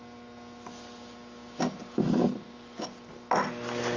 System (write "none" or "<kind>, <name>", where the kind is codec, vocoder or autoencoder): none